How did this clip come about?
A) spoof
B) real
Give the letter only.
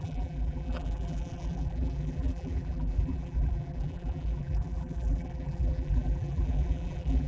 A